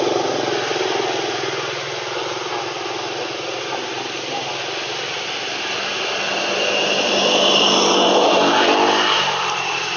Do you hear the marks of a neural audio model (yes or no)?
no